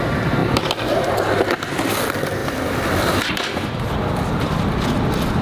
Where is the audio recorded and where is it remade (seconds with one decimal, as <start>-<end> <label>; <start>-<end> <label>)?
0.0-2.4 recorded; 2.4-4.7 remade; 4.7-5.4 recorded